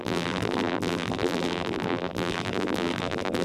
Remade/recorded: remade